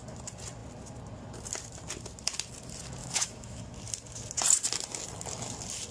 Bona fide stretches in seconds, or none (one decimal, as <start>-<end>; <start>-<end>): 0.0-3.0; 3.6-5.9